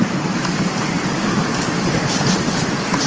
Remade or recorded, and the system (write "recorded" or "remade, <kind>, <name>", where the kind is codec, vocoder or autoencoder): remade, vocoder, BigVGAN v2